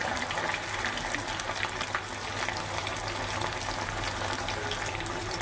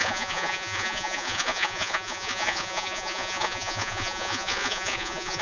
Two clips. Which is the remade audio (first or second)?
second